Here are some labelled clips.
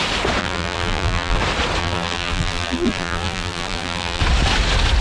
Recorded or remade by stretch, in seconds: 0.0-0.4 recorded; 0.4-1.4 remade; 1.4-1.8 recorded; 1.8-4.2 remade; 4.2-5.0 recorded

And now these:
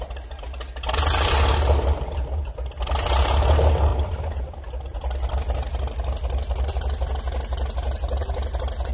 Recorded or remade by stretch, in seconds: 0.0-8.9 recorded

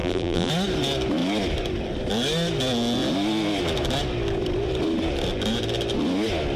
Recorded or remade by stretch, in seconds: 0.0-0.5 remade; 0.5-6.6 recorded

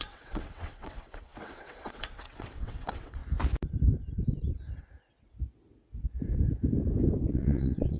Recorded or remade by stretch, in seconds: 0.0-3.2 remade; 3.2-7.3 recorded; 7.3-8.0 remade

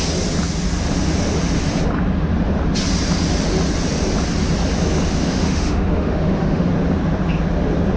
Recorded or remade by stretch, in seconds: 0.0-5.2 recorded; 5.2-6.7 remade; 6.7-8.0 recorded